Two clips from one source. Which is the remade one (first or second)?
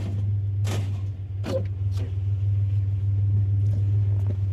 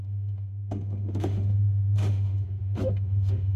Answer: second